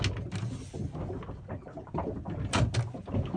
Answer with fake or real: real